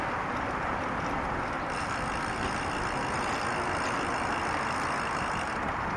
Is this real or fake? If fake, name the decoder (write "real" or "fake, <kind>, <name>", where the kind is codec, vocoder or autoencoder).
real